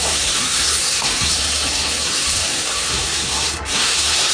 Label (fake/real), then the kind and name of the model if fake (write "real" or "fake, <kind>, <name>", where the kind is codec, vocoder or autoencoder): fake, codec, SNAC